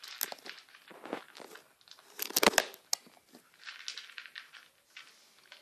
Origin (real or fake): real